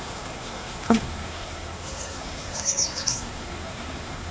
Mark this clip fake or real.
fake